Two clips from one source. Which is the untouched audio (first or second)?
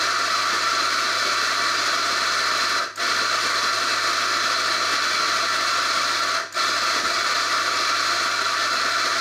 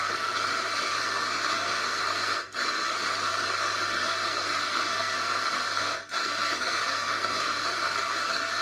first